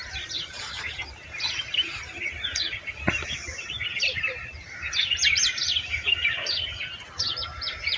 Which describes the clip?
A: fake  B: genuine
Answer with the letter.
A